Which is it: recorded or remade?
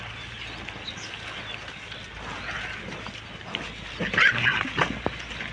recorded